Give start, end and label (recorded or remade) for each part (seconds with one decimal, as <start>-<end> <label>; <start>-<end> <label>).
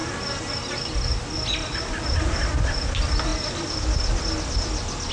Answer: 0.0-5.1 recorded